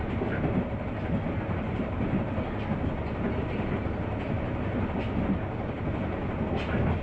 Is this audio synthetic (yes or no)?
no